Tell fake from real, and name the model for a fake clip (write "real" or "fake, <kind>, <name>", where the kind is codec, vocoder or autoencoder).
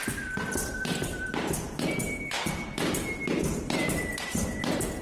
real